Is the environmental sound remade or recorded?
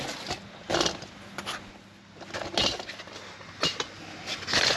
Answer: recorded